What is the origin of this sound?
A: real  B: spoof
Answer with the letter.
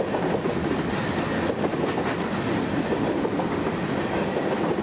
A